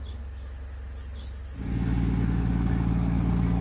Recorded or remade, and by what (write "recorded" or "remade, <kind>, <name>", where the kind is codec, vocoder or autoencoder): recorded